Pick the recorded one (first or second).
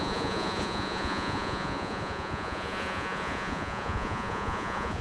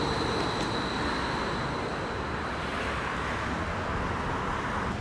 second